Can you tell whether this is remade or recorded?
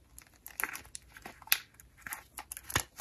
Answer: recorded